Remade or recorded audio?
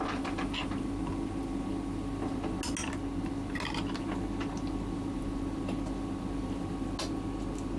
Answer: recorded